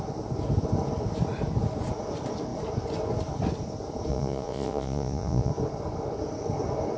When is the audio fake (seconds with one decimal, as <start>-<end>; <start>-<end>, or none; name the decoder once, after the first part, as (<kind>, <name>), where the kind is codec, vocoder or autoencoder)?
4.1-5.5 (vocoder, Vocos)